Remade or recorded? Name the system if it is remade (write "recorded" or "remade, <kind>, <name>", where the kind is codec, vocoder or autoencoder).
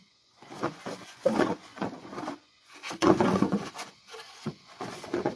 remade, vocoder, Vocos